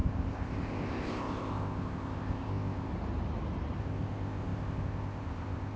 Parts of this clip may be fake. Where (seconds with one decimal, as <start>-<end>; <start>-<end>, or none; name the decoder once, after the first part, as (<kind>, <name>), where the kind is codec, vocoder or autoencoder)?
0.0-2.9 (codec, ZipCodec); 3.8-5.8